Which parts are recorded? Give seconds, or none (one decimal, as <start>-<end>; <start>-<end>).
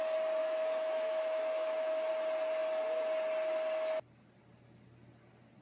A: 0.0-0.4; 2.1-5.6